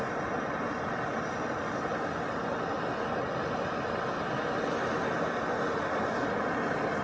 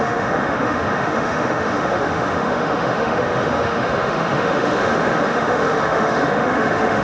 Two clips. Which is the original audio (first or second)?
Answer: first